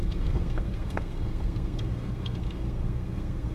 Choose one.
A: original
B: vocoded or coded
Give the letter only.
B